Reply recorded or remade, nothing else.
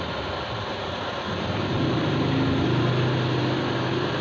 recorded